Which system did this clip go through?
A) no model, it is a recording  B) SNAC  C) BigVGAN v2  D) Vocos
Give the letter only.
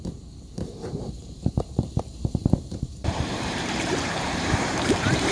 C